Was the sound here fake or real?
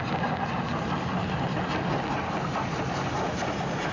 real